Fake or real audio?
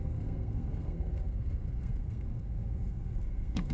fake